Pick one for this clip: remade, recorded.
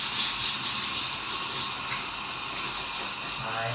recorded